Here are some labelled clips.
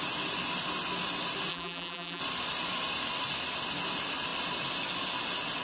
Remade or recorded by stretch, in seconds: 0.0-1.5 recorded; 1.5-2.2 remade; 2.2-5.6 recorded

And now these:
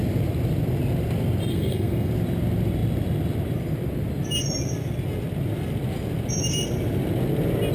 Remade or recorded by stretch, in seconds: 0.0-1.5 recorded; 1.5-2.1 remade; 2.1-7.7 recorded